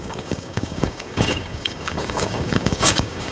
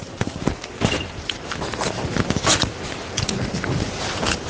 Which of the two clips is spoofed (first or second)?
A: first